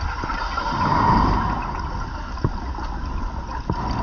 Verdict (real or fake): real